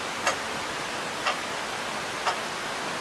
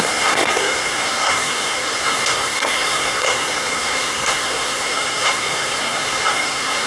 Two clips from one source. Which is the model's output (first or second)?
second